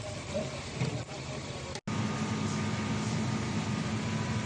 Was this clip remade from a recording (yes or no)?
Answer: no